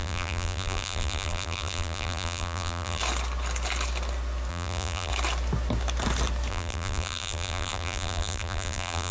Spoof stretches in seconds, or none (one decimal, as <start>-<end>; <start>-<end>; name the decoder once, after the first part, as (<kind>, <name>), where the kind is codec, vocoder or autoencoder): 0.0-3.0 (vocoder, BigVGAN v2); 4.5-5.1; 6.5-9.1